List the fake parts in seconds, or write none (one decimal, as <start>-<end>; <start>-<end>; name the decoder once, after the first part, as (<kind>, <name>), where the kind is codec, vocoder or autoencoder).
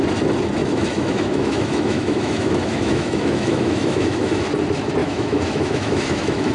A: 0.6-4.5 (autoencoder, DAC-VAE); 5.0-6.5